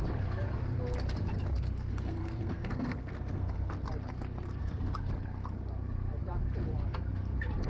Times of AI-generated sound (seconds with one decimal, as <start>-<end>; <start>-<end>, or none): 1.9-3.7; 4.6-5.1

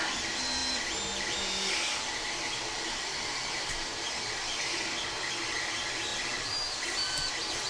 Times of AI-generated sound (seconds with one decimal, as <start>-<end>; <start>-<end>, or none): 0.6-3.7; 6.1-7.3

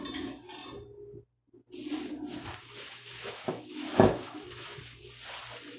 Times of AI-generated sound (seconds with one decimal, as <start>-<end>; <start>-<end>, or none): 2.3-5.0

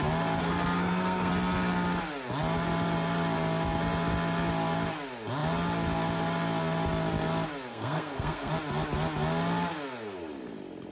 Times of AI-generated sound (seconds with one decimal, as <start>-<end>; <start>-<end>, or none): 0.4-1.3; 7.7-8.5

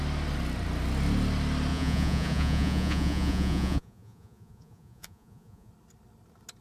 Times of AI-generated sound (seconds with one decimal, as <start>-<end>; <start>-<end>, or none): 1.7-5.7

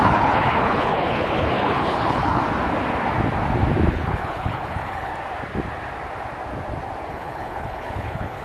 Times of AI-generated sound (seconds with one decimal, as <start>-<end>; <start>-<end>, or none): 0.0-2.4; 3.9-5.1; 7.1-8.4